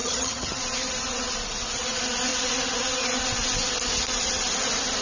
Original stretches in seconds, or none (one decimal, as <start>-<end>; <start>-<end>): 0.6-5.0